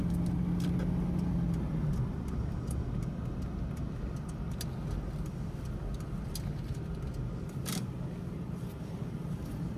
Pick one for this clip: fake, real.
real